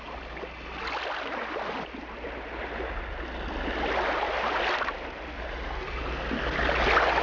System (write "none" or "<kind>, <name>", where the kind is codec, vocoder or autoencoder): none